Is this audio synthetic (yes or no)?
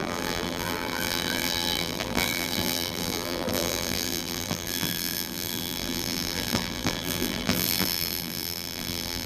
yes